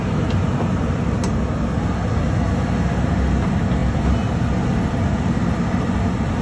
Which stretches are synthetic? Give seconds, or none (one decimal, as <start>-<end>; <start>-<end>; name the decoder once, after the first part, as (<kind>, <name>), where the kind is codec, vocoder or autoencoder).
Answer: none